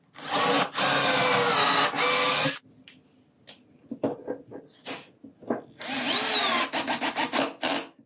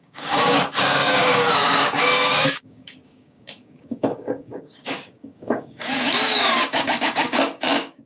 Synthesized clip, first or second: second